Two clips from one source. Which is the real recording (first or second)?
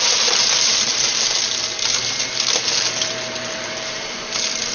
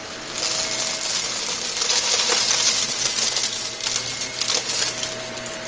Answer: second